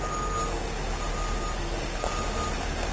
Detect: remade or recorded recorded